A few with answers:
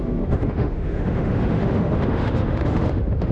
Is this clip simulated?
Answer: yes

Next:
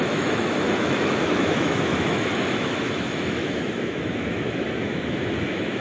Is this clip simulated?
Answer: yes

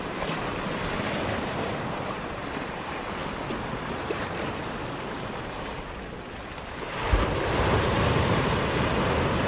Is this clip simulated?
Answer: no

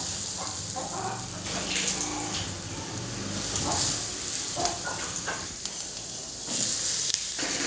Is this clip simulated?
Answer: no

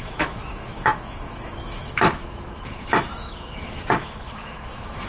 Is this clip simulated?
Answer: yes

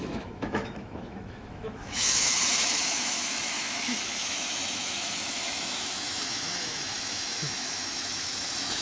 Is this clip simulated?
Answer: yes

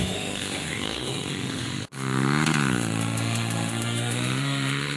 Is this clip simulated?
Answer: yes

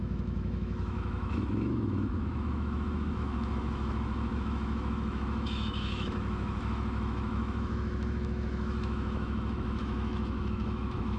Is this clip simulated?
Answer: yes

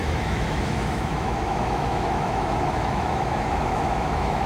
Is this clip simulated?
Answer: yes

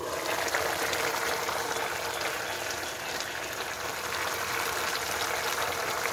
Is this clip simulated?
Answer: no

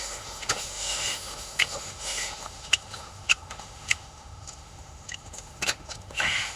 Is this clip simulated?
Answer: yes